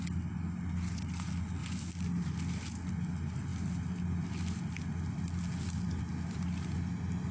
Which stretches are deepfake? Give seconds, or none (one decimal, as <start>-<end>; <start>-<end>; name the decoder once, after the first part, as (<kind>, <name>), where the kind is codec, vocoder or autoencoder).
none